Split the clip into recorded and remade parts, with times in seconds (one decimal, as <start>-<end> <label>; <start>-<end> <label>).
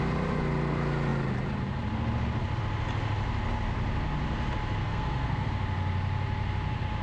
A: 0.0-4.8 recorded; 4.8-5.5 remade; 5.5-7.0 recorded